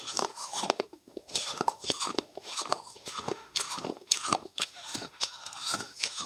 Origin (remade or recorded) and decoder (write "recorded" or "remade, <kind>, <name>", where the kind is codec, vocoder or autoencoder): remade, autoencoder, DAC-VAE